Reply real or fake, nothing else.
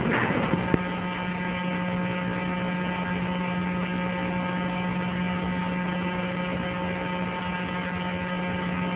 real